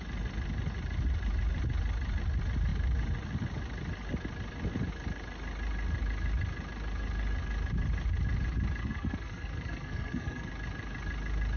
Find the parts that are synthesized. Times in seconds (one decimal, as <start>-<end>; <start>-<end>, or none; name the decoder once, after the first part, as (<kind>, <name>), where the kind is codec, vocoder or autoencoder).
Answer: 8.8-10.5 (codec, SNAC)